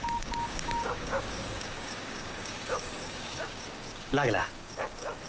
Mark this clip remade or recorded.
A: remade